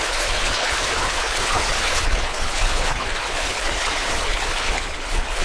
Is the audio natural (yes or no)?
no